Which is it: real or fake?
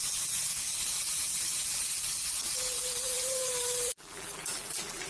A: fake